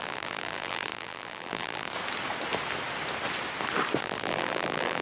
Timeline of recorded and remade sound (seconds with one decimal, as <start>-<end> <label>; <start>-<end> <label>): 0.0-1.9 remade; 1.9-4.0 recorded; 4.0-5.0 remade